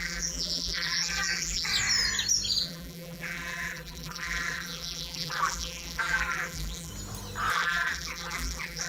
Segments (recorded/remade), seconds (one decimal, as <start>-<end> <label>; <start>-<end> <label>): 0.0-1.7 remade; 1.7-2.6 recorded; 2.6-6.9 remade; 6.9-7.5 recorded; 7.5-8.9 remade